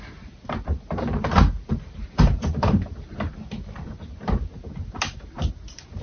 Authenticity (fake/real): fake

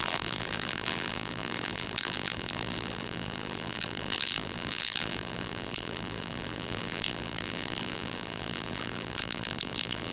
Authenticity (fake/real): fake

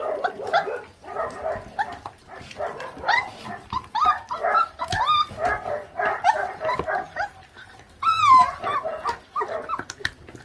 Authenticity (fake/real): real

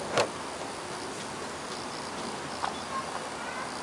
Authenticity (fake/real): real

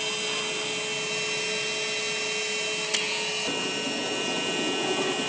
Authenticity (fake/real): real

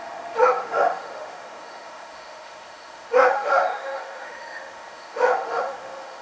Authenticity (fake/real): fake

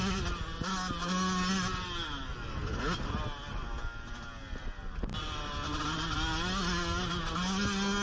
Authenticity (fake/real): real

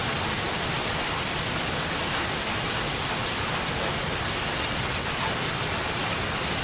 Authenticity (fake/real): real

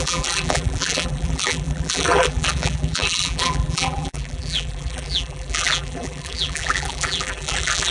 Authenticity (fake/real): fake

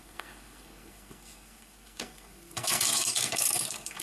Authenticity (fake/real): fake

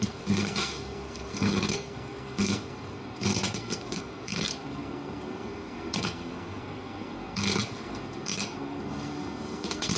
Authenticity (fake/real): fake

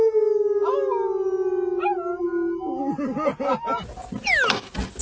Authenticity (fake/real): real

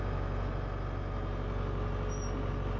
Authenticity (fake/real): real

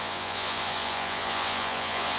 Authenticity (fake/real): fake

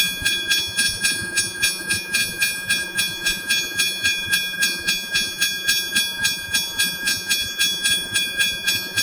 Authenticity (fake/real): fake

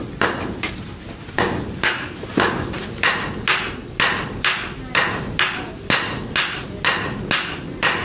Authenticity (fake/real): real